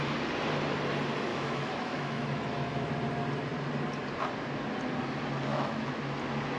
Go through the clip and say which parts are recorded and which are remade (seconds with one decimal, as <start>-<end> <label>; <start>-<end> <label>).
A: 0.0-1.3 recorded; 1.3-2.9 remade; 2.9-5.5 recorded; 5.5-6.0 remade; 6.0-6.6 recorded